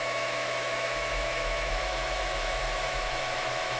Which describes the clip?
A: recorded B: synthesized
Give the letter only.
B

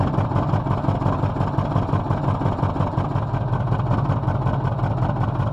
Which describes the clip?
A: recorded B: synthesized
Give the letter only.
A